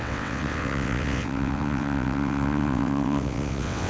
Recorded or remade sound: remade